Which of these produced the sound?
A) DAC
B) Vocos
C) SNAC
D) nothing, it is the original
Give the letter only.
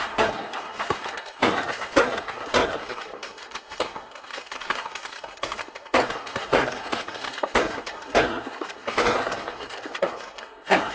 C